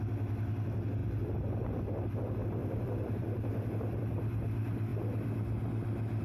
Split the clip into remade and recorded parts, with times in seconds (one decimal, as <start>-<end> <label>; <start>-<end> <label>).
0.0-1.0 recorded; 1.0-1.5 remade; 1.5-2.6 recorded; 2.6-3.7 remade; 3.7-6.2 recorded